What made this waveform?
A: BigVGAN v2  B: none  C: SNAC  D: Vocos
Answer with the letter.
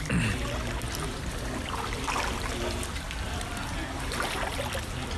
B